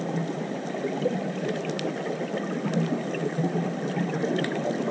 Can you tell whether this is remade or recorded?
recorded